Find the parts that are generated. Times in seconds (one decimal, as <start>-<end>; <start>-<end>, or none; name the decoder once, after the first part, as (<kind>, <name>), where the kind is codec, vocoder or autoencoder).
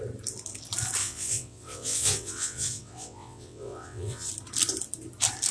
1.0-4.3 (vocoder, WaveNeXt)